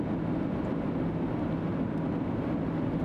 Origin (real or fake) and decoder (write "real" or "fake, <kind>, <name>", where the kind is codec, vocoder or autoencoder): real